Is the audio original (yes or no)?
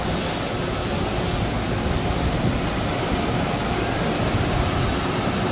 yes